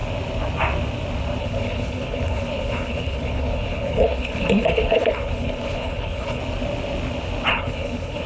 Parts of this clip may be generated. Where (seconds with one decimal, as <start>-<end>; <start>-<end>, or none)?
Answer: 1.4-6.4; 7.5-8.3